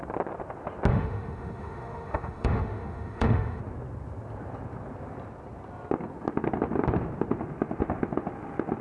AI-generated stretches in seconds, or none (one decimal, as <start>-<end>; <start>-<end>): 0.9-3.6